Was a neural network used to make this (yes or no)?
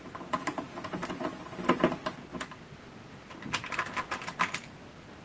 no